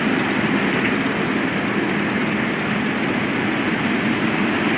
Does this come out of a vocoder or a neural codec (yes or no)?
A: no